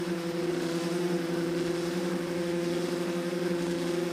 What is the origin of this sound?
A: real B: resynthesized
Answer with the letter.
B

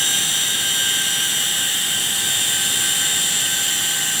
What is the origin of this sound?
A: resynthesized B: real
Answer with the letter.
B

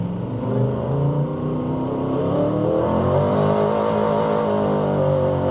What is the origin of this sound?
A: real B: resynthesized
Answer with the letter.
A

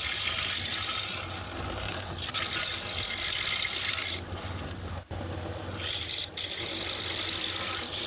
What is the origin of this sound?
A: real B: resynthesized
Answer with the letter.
A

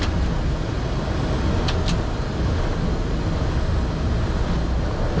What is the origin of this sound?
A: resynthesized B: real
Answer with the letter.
B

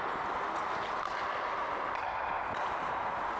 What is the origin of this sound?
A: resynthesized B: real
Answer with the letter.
B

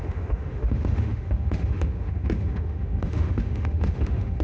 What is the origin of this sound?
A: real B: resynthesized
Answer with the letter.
B